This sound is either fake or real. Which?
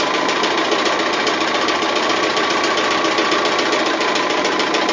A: real